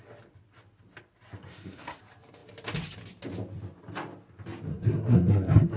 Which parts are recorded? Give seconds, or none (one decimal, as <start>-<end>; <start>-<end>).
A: 0.0-1.4; 2.0-4.7